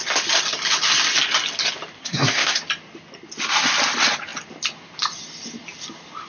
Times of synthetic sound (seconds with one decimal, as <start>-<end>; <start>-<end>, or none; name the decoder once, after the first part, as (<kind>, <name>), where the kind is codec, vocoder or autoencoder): 2.0-2.6 (codec, SNAC)